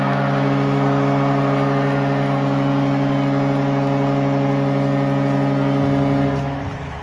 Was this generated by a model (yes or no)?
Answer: no